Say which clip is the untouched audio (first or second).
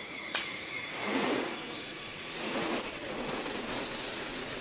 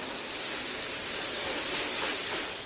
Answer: second